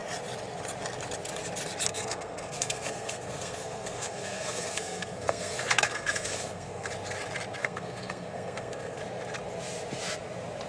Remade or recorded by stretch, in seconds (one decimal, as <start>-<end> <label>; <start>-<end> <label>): 0.0-1.9 recorded; 1.9-6.9 remade; 6.9-7.6 recorded; 7.6-9.0 remade; 9.0-10.7 recorded

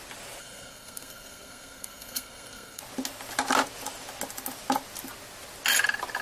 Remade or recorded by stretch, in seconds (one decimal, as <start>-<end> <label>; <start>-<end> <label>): 0.0-0.4 recorded; 0.4-2.8 remade; 2.8-6.2 recorded

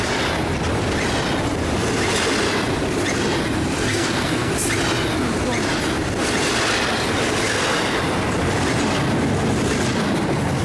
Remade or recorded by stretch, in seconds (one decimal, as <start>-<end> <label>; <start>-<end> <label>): 0.0-3.9 recorded; 3.9-4.5 remade; 4.5-10.6 recorded

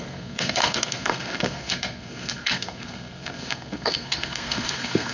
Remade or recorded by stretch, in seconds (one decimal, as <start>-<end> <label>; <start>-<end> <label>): 0.0-5.1 remade

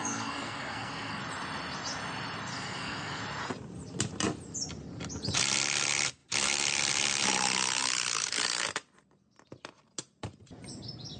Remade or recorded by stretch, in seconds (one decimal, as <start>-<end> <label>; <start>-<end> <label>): 0.0-1.2 remade; 1.2-2.5 recorded; 2.5-3.2 remade; 3.2-11.2 recorded

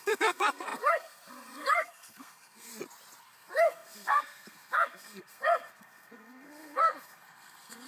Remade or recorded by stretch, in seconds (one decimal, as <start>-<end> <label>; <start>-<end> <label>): 0.0-2.7 remade; 2.7-3.2 recorded; 3.2-7.9 remade

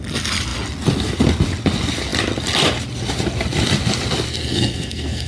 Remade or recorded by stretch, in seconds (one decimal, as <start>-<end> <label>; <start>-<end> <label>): 0.0-4.3 recorded; 4.3-5.3 remade